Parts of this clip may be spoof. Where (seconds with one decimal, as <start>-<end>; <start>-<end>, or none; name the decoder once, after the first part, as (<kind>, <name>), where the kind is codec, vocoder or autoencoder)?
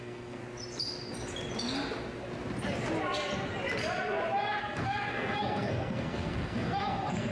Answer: 0.0-0.4 (codec, SNAC); 4.6-7.3